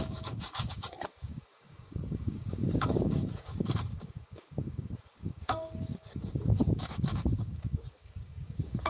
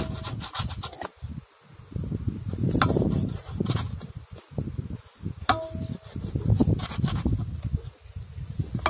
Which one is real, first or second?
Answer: second